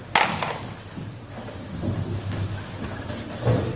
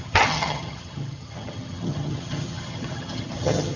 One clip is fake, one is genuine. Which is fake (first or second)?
second